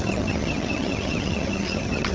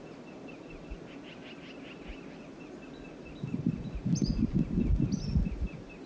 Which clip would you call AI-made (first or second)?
first